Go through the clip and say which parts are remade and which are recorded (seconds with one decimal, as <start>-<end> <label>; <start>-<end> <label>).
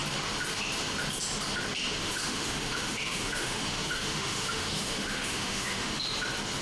0.0-2.0 recorded; 2.0-6.0 remade; 6.0-6.6 recorded